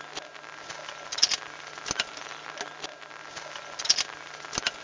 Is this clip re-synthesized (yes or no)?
no